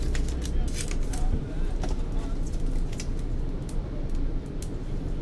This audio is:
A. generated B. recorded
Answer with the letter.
B